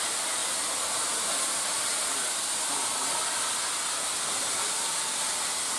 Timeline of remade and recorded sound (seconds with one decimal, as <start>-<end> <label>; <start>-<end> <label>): 0.0-5.8 recorded